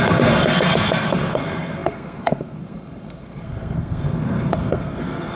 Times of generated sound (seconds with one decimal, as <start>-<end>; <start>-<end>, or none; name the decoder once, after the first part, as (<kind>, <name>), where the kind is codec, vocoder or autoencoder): 0.0-5.4 (codec, SNAC)